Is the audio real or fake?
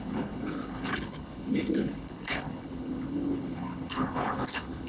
fake